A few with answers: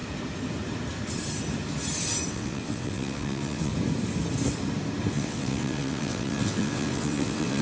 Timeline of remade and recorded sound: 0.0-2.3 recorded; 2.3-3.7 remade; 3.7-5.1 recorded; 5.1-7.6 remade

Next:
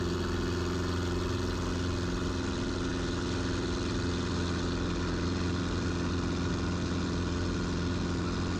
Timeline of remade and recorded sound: 0.0-8.6 recorded

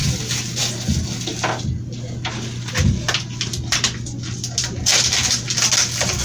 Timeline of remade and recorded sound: 0.0-6.2 recorded

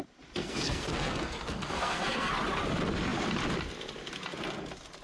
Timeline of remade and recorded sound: 0.0-0.4 recorded; 0.4-2.3 remade; 2.3-5.0 recorded

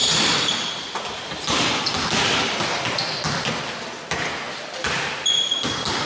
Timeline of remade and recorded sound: 0.0-0.7 remade; 0.7-6.1 recorded

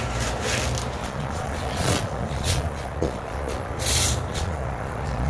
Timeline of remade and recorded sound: 0.0-1.0 recorded; 1.0-3.8 remade; 3.8-4.3 recorded; 4.3-5.3 remade

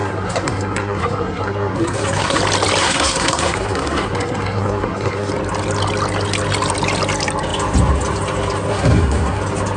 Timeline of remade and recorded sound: 0.0-2.4 remade; 2.4-2.8 recorded; 2.8-5.3 remade; 5.3-8.7 recorded; 8.7-9.4 remade; 9.4-9.8 recorded